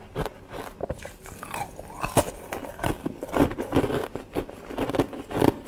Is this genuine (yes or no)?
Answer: yes